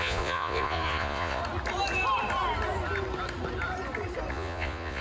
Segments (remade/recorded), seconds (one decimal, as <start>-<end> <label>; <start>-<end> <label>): 0.0-1.4 remade; 1.4-4.3 recorded; 4.3-5.0 remade

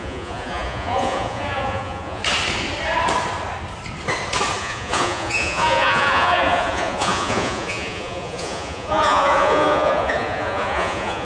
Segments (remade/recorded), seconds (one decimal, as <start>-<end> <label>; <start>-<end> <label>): 0.0-2.2 remade; 2.2-4.6 recorded; 4.6-11.2 remade